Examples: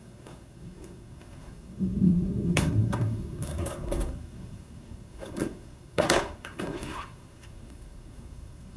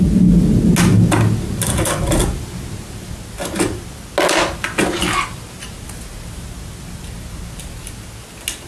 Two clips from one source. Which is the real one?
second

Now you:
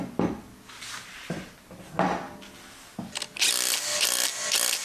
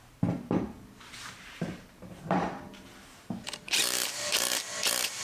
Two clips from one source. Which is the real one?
first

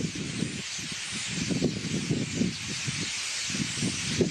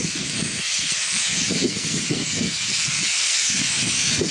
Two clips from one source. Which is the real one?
first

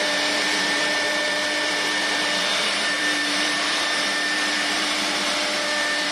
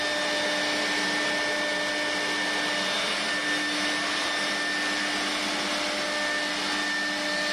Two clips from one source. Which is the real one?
second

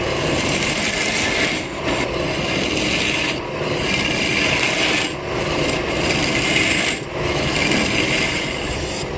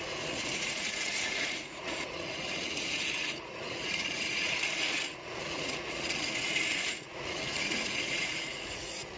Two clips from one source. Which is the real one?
first